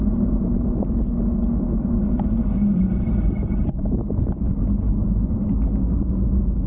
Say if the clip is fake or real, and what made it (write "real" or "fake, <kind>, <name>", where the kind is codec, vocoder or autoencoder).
real